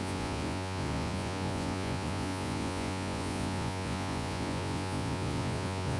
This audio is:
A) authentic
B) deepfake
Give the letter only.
B